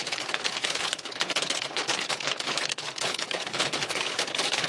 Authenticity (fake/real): fake